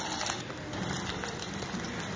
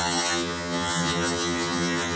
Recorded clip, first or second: first